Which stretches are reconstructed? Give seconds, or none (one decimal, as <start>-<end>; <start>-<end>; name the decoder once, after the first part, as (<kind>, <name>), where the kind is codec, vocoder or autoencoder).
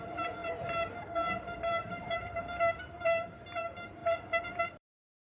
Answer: 0.0-4.0 (vocoder, BigVGAN v2); 4.6-5.3